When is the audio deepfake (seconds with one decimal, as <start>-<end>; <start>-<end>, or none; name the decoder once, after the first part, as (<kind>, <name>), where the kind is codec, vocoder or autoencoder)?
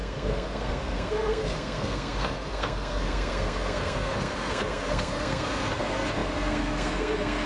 0.0-7.5 (codec, SNAC)